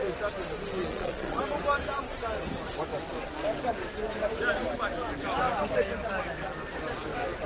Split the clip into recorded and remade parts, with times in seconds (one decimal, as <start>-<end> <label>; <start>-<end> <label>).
0.0-0.8 recorded; 0.8-1.4 remade; 1.4-7.5 recorded